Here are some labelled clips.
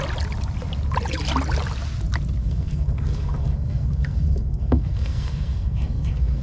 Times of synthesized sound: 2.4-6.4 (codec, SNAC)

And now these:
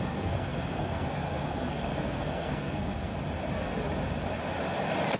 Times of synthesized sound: 0.0-3.1 (codec, SNAC)

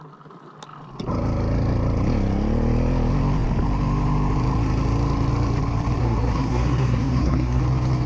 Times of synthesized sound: 6.0-7.6 (codec, SNAC)

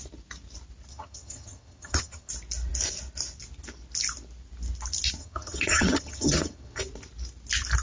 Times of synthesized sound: 0.9-2.3 (vocoder, HiFi-GAN); 5.2-6.8

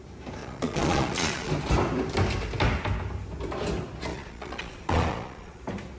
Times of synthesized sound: 0.4-1.5 (vocoder, Vocos); 4.1-5.6